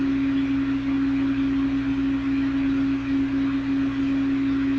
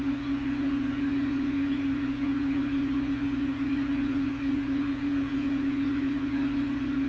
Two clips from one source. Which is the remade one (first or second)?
second